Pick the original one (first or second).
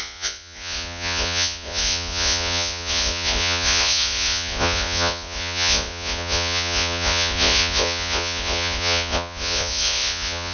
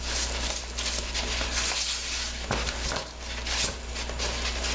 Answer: second